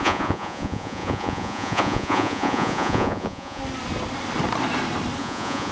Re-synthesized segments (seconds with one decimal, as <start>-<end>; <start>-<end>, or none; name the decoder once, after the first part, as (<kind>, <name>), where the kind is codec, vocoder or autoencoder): 0.0-3.6 (vocoder, Vocos); 5.2-5.7